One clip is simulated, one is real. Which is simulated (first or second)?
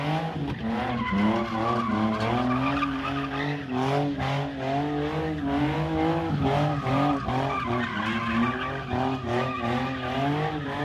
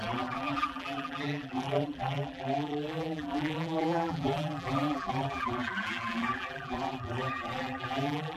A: second